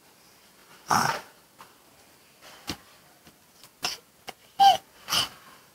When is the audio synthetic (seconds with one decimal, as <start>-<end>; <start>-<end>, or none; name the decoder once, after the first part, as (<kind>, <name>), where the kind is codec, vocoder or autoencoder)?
4.4-5.7 (vocoder, BigVGAN v2)